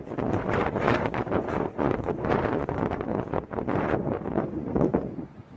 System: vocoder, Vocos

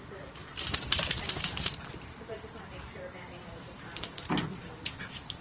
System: vocoder, BigVGAN v2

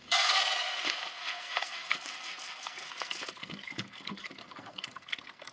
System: codec, SNAC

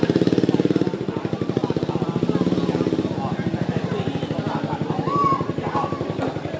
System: vocoder, BigVGAN v2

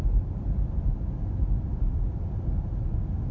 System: none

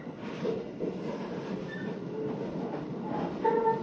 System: none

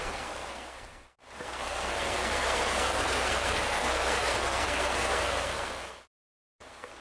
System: codec, SNAC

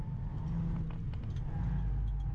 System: none